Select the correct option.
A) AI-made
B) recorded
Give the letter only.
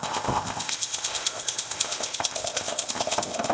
A